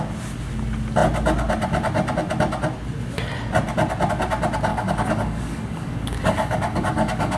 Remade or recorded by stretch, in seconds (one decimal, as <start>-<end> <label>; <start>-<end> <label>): 0.0-4.7 recorded; 4.7-7.4 remade